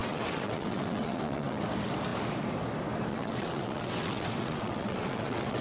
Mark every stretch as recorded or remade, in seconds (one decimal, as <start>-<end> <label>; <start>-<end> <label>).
0.0-1.6 remade; 1.6-3.1 recorded; 3.1-5.6 remade